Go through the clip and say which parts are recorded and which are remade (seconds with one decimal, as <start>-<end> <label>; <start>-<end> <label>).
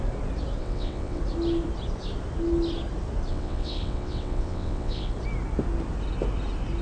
0.0-0.6 recorded; 0.6-1.2 remade; 1.2-3.3 recorded; 3.3-5.1 remade; 5.1-6.8 recorded